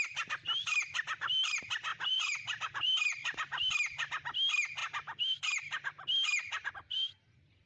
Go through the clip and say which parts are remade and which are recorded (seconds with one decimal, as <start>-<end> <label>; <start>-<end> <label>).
0.0-1.9 recorded; 1.9-3.7 remade; 3.7-4.8 recorded; 4.8-6.7 remade; 6.7-7.7 recorded